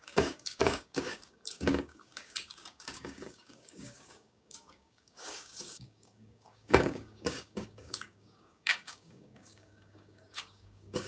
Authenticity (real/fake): fake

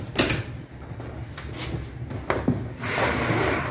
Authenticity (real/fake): real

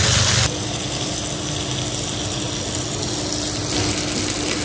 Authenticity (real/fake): real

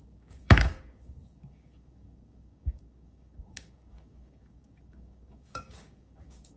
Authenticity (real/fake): fake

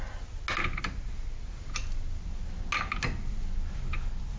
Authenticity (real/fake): real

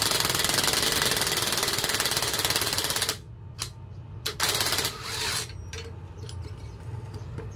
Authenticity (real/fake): real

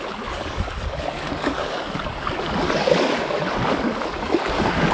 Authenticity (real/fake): fake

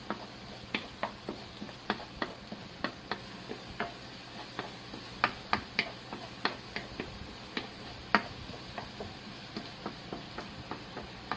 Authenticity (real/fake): real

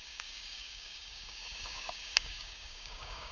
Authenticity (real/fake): fake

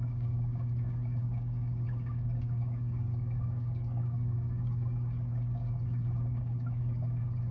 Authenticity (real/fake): fake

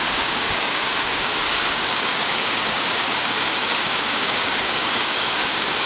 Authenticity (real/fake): fake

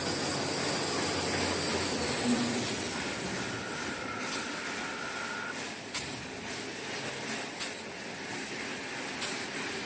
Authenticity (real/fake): real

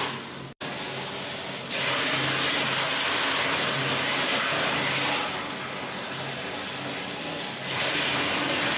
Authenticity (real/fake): real